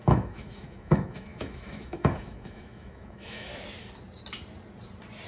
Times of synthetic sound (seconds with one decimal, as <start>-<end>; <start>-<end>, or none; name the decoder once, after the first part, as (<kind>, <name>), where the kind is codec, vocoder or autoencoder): 0.0-3.5 (autoencoder, DAC-VAE)